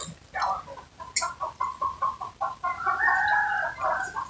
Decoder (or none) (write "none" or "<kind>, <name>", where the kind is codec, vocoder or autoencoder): none